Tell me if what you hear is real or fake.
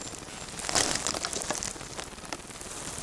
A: real